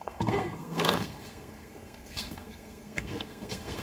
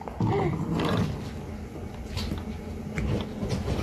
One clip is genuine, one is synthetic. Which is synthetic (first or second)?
first